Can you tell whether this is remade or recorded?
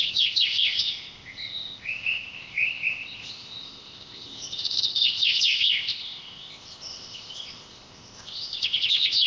remade